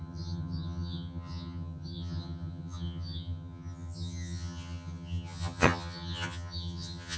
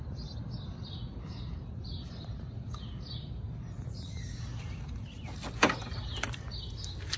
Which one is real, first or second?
second